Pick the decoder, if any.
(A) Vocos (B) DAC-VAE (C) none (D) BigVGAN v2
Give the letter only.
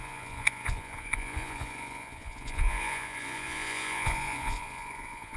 A